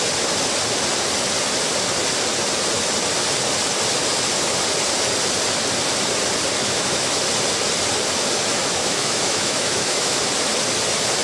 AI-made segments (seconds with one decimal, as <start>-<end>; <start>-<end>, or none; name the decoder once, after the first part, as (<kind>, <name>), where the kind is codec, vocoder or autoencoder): 6.6-7.2 (autoencoder, DAC-VAE); 8.6-10.2